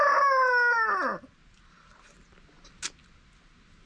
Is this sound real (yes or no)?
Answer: yes